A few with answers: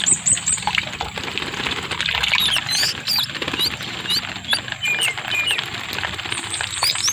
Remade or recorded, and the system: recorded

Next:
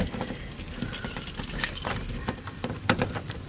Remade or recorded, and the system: recorded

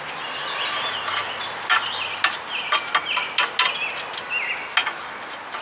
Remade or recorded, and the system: recorded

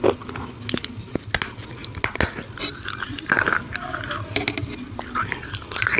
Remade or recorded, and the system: recorded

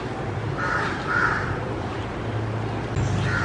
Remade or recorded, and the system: recorded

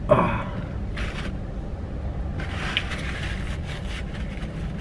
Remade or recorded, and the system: recorded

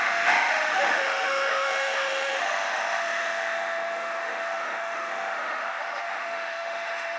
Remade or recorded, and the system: remade, autoencoder, DAC-VAE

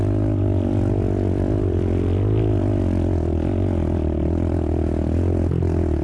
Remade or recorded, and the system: recorded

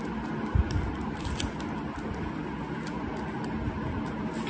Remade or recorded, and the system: recorded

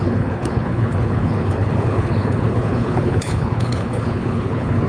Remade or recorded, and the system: remade, codec, HILCodec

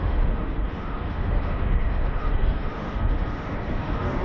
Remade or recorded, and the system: remade, autoencoder, DAC-VAE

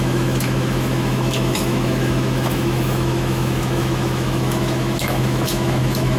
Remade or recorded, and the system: remade, autoencoder, DAC-VAE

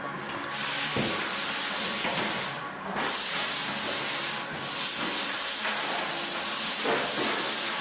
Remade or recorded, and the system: recorded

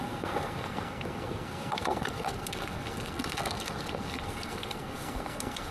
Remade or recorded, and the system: remade, codec, SNAC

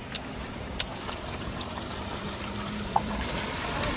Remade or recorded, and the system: remade, vocoder, BigVGAN v2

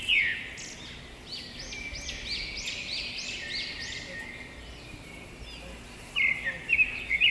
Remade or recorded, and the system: recorded